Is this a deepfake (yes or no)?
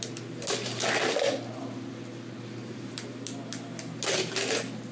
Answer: no